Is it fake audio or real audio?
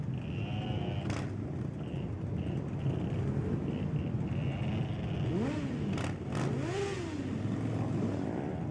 real